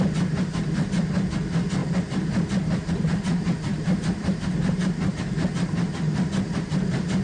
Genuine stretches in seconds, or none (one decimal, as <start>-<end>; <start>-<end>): 0.0-3.7; 5.1-7.2